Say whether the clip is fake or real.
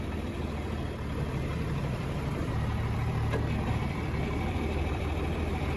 fake